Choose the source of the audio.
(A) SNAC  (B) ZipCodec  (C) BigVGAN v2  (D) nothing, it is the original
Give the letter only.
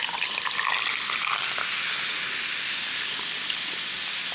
D